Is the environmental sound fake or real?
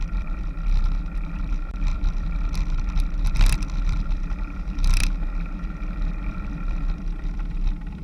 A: fake